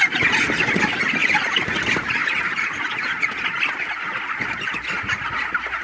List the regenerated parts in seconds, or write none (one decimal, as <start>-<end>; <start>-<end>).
1.2-1.8; 2.2-3.3